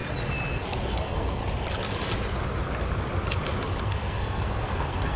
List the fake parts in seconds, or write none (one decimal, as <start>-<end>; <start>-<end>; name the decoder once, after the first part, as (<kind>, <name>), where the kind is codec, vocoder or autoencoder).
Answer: 0.9-1.4 (codec, SNAC); 3.8-5.2